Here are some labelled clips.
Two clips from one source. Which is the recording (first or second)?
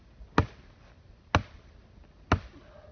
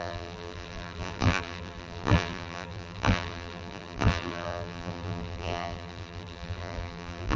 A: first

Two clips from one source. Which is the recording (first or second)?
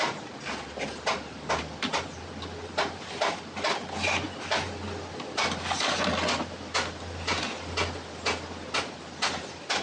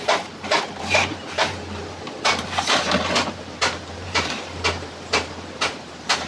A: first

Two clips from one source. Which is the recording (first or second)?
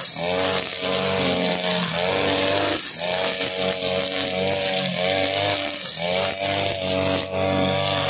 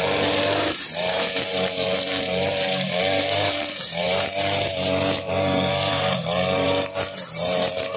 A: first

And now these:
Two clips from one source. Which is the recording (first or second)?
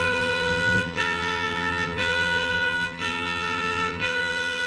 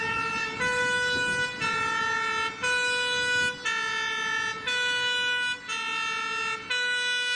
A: second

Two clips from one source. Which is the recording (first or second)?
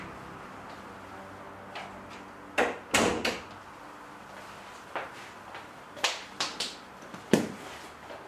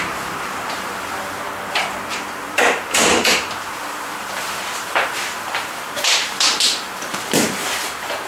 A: first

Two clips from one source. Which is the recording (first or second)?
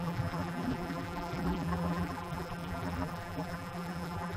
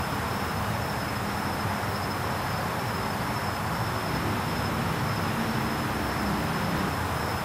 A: second